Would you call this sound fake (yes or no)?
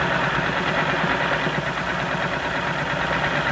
no